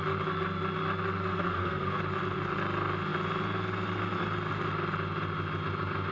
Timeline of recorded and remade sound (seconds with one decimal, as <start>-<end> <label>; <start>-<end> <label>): 0.0-1.3 recorded; 1.3-2.0 remade; 2.0-6.1 recorded